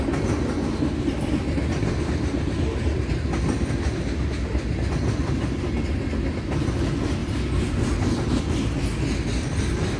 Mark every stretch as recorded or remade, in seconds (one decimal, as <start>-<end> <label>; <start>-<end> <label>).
0.0-7.2 recorded; 7.2-8.4 remade; 8.4-10.0 recorded